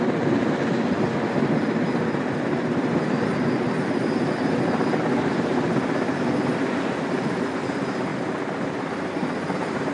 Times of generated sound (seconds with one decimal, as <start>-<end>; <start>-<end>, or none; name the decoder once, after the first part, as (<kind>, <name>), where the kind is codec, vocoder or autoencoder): 0.4-5.0 (vocoder, BigVGAN v2); 8.1-9.1